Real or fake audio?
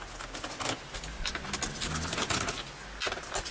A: real